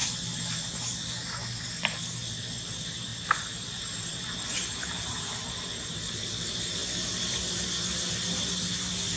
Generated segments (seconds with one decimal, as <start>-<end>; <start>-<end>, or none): 0.0-6.8